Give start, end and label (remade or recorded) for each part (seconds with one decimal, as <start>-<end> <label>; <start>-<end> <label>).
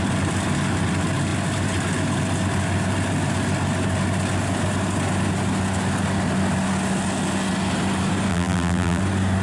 0.0-8.3 recorded; 8.3-9.0 remade; 9.0-9.4 recorded